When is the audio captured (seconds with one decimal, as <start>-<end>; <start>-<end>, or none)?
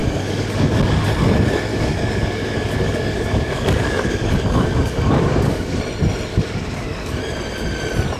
1.1-1.7; 5.8-6.3; 7.2-8.2